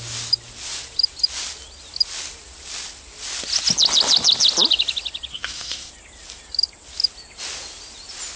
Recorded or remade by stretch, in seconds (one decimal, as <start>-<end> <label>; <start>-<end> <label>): 0.0-5.3 recorded; 5.3-5.9 remade; 5.9-8.4 recorded